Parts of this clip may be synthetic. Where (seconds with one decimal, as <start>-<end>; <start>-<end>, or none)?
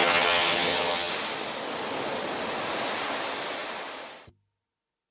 0.0-1.1